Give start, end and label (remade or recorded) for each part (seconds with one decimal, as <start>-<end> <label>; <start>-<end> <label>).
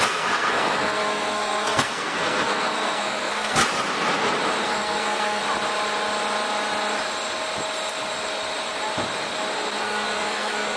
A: 0.0-3.6 remade; 3.6-4.6 recorded; 4.6-5.4 remade; 5.4-9.8 recorded; 9.8-10.8 remade